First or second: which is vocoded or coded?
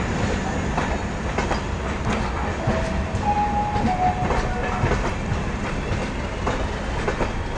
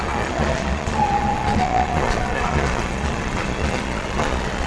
second